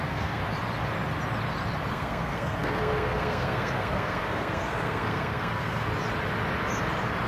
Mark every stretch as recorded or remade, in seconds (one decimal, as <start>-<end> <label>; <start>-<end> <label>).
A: 0.0-0.4 remade; 0.4-1.9 recorded; 1.9-5.9 remade; 5.9-7.3 recorded